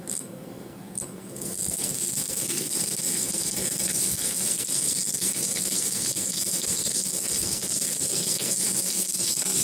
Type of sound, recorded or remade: remade